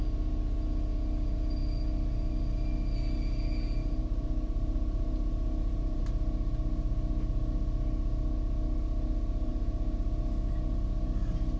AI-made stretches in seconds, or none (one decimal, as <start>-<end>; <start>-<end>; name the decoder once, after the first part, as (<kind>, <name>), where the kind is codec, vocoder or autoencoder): 3.8-6.0 (vocoder, BigVGAN v2)